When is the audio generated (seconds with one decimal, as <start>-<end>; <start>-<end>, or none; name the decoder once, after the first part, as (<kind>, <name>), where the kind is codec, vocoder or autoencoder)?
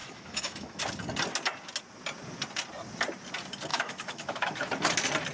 0.0-0.8 (autoencoder, DAC-VAE); 3.7-4.7